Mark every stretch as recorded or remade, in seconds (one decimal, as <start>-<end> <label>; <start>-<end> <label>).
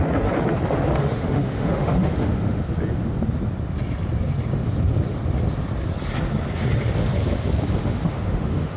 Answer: 0.0-0.9 recorded; 0.9-2.6 remade; 2.6-7.8 recorded; 7.8-8.8 remade